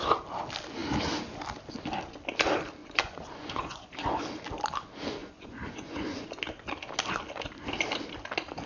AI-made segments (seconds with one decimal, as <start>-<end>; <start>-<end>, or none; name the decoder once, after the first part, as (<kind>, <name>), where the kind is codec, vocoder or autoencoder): 2.8-4.2 (vocoder, Vocos); 5.2-6.4